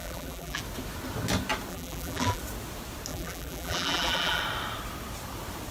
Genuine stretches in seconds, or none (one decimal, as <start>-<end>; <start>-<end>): 0.6-1.7; 2.4-3.1; 4.4-5.7